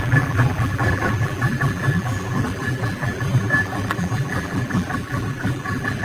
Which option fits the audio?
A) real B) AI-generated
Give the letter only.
B